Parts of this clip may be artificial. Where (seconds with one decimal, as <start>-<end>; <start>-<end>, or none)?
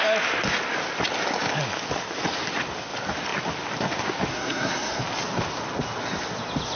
4.3-5.0